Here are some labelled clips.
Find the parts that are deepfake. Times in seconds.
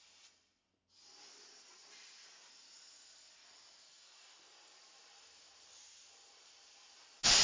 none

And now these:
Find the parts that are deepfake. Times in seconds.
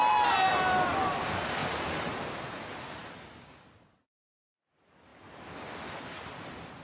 1.6-2.4 (vocoder, BigVGAN v2)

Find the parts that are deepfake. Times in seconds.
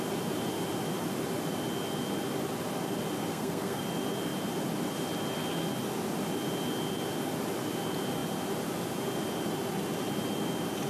3.3-3.8 (codec, SNAC)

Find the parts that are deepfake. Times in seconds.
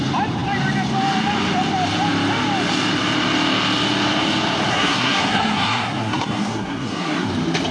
4.7-7.3 (codec, SNAC)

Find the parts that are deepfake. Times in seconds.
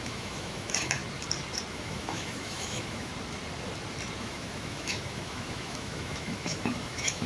0.0-1.0 (autoencoder, DAC-VAE); 1.7-3.1; 4.2-7.3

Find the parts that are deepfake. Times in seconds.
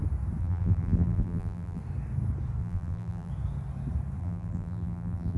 0.4-1.8 (vocoder, BigVGAN v2); 2.6-3.3; 4.2-5.4